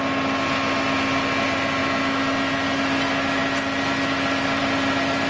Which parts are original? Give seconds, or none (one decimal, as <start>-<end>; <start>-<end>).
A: 0.0-5.3